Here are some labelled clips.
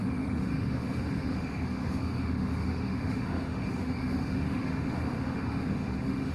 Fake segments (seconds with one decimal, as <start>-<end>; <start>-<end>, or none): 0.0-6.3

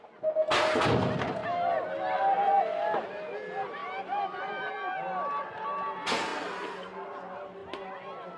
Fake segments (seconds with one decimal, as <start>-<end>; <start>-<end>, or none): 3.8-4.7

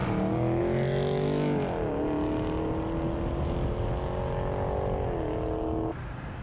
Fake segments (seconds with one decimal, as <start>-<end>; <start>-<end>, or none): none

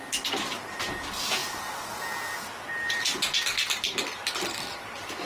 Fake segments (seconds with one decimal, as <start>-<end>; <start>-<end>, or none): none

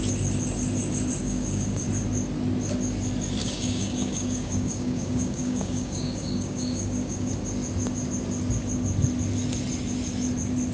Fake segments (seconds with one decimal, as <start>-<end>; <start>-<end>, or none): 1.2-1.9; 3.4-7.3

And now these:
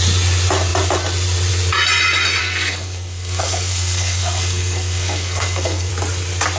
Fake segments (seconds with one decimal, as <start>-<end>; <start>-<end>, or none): 2.4-5.9

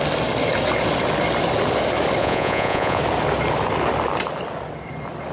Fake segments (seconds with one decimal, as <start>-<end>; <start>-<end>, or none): 2.2-3.0

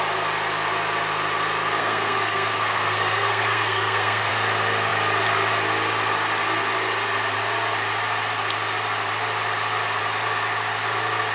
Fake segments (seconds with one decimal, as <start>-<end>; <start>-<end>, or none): 1.8-4.3